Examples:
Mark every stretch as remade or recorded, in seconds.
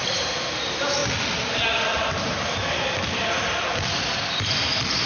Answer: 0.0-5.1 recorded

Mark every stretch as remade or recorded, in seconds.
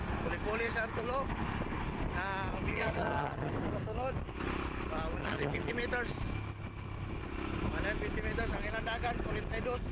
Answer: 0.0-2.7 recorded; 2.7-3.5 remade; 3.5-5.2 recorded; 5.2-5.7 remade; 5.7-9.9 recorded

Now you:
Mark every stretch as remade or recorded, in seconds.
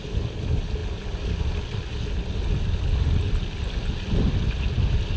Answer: 0.0-5.2 recorded